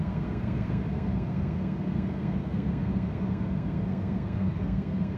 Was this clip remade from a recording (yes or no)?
yes